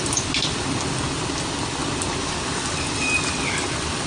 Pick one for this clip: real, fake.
real